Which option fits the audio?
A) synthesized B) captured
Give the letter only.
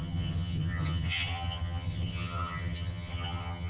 A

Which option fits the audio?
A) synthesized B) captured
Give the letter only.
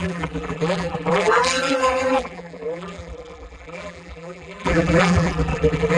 A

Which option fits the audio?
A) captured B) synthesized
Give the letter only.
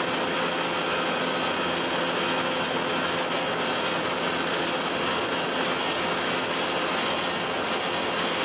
A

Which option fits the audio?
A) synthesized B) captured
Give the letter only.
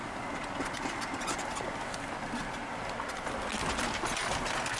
B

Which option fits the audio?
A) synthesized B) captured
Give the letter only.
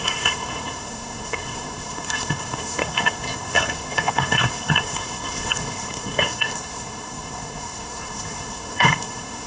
A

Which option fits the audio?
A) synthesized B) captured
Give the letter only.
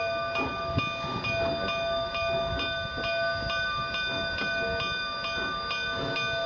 B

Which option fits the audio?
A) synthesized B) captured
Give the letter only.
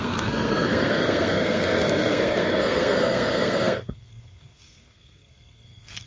A